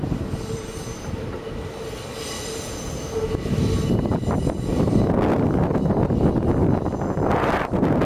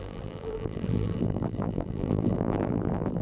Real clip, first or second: first